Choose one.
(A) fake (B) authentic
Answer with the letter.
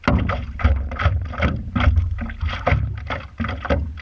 B